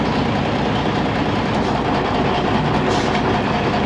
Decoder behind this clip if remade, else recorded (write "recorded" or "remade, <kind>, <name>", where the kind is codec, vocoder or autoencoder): recorded